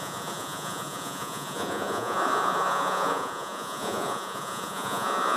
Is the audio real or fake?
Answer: fake